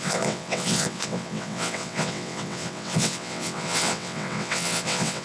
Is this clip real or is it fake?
fake